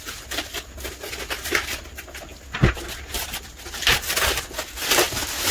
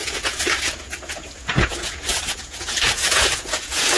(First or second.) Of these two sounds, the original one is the first